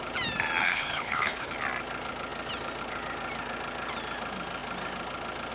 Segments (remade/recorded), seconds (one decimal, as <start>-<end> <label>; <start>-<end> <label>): 0.0-0.6 recorded; 0.6-1.5 remade; 1.5-5.5 recorded